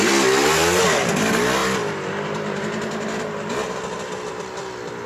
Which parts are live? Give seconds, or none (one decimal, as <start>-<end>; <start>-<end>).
0.0-5.1